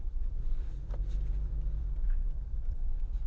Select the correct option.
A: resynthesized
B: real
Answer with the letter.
A